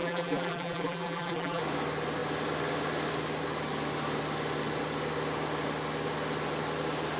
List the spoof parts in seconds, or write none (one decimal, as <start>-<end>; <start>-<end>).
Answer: 0.0-1.6